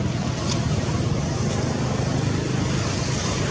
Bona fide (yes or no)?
yes